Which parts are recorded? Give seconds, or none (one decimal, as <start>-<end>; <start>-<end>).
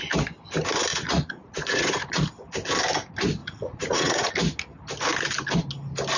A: 0.0-0.9; 2.2-3.4; 4.3-6.2